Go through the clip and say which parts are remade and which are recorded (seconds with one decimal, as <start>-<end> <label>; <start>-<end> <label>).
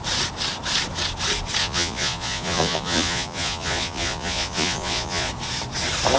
0.0-1.6 recorded; 1.6-5.3 remade; 5.3-6.2 recorded